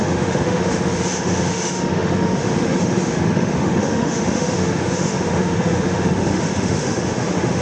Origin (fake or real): fake